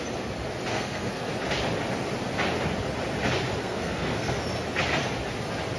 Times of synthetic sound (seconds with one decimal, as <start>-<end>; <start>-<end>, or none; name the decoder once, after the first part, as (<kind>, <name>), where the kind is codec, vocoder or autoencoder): 0.7-1.3 (codec, SNAC); 3.6-4.3